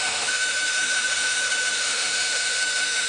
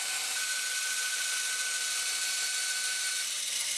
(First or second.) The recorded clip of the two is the second